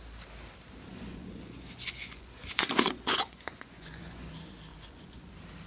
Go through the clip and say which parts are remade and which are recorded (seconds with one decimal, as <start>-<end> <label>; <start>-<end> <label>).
0.0-0.9 recorded; 0.9-4.3 remade; 4.3-4.7 recorded; 4.7-5.3 remade; 5.3-5.7 recorded